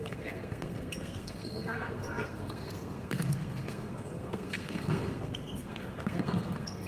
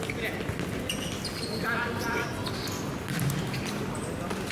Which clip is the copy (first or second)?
first